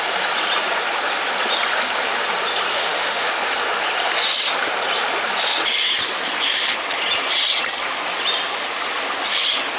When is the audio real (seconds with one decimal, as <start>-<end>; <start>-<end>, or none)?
0.0-2.7; 3.3-9.8

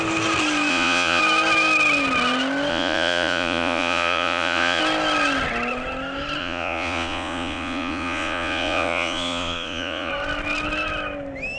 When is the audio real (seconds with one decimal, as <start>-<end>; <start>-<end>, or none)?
0.0-0.7; 1.2-2.7; 4.8-6.4; 10.1-11.6

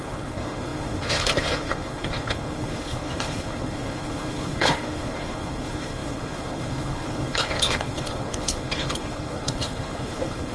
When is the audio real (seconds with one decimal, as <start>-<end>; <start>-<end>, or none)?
none

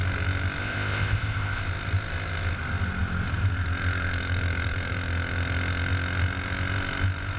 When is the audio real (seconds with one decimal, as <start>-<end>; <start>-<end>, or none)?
0.0-0.6; 1.6-7.4

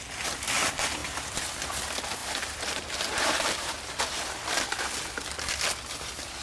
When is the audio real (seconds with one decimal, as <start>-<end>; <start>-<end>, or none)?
0.0-2.2; 4.0-6.4